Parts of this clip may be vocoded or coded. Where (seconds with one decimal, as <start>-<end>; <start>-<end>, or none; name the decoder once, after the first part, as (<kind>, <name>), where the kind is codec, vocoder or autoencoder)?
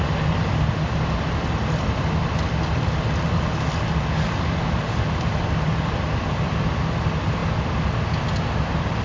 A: none